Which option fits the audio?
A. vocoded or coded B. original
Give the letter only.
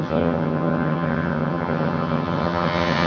A